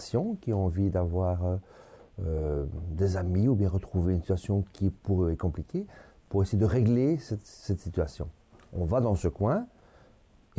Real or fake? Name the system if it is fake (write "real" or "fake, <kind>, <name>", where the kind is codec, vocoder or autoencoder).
fake, vocoder, BigVGAN v2